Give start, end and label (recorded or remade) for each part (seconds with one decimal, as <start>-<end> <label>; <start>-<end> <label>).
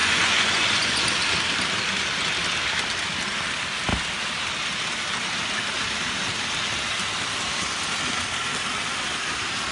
0.0-1.0 remade; 1.0-9.7 recorded